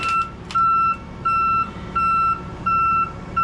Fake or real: real